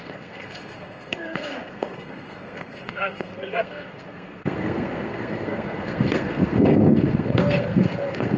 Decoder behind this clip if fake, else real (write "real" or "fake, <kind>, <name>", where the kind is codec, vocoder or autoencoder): fake, codec, SNAC